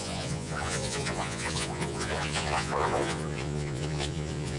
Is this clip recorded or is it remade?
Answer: remade